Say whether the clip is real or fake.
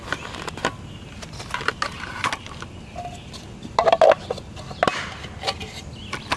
real